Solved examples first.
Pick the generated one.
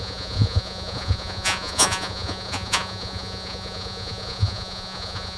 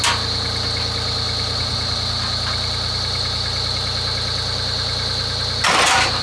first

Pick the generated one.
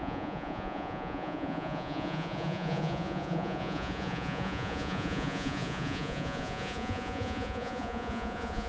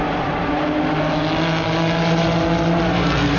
first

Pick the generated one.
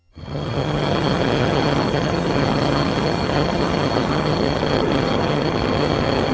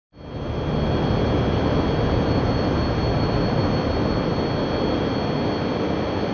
first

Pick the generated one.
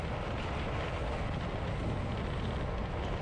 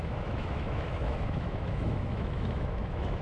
second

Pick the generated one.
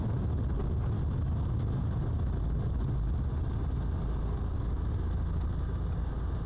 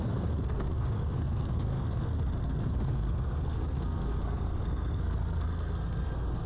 second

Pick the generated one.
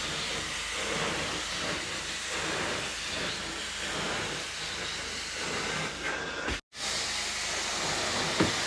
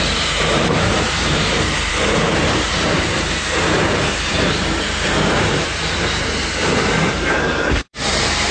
second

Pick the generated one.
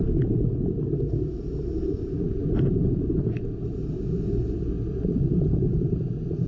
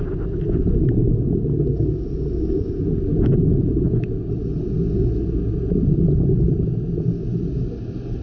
first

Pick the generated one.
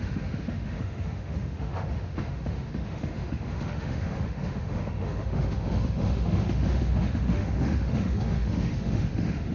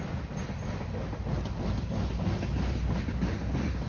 first